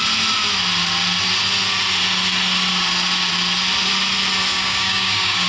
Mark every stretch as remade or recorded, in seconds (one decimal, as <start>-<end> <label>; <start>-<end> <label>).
0.0-4.5 recorded; 4.5-5.5 remade